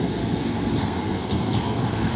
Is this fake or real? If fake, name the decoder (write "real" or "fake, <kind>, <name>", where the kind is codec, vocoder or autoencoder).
fake, codec, SNAC